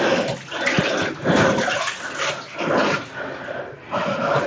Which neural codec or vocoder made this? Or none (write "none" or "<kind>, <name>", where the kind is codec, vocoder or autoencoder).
none